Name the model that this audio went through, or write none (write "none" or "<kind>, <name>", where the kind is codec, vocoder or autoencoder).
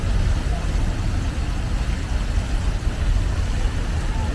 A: none